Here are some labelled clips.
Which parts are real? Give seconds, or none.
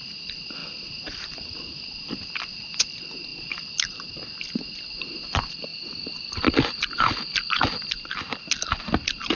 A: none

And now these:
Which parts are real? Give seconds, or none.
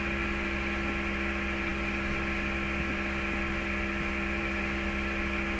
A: 0.0-5.6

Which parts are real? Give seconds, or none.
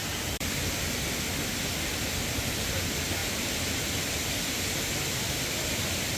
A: 0.5-3.2; 3.7-6.2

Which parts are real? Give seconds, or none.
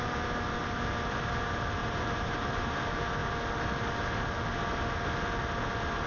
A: 0.0-1.8; 2.7-6.1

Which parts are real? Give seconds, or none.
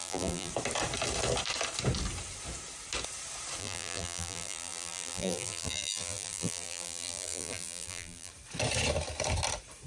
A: 0.5-3.6; 8.3-9.9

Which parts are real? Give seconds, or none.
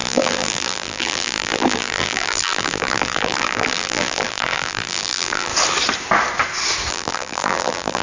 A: 5.5-6.9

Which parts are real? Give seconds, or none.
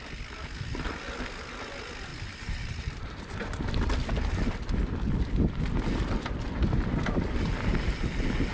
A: 0.0-2.1; 3.2-8.5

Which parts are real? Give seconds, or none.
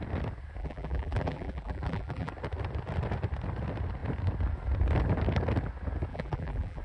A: 0.0-0.6; 2.3-6.1